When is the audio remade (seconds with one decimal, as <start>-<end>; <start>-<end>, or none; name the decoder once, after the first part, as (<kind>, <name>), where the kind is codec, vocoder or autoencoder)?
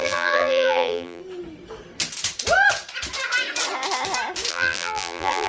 0.0-1.2 (vocoder, BigVGAN v2); 4.5-5.5